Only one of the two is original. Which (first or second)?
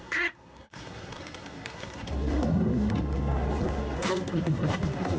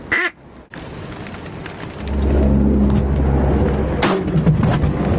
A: second